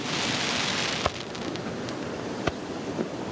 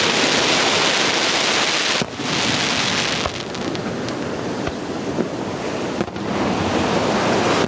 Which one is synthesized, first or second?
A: first